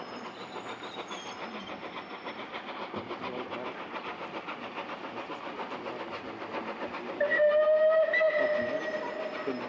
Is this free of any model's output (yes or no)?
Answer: yes